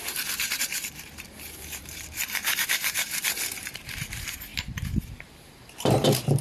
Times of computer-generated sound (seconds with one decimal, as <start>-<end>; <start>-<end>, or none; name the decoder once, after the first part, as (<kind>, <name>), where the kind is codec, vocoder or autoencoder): 0.0-6.4 (vocoder, BigVGAN v2)